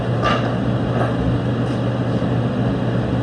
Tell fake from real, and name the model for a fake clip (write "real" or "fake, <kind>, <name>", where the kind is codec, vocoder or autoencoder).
real